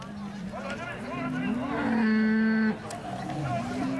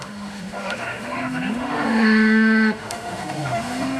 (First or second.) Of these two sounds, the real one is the first